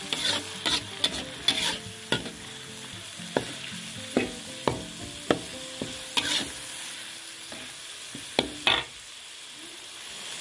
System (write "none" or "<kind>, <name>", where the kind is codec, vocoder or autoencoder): none